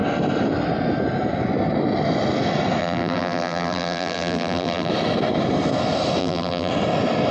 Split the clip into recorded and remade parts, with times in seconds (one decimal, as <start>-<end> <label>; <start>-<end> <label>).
0.0-2.8 recorded; 2.8-4.9 remade; 4.9-6.2 recorded; 6.2-6.7 remade; 6.7-7.3 recorded